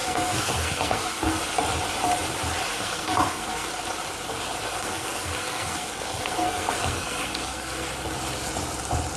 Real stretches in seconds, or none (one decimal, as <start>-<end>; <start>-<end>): 1.4-2.7; 3.7-4.7; 7.9-9.2